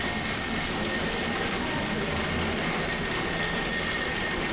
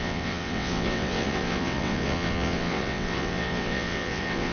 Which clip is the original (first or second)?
first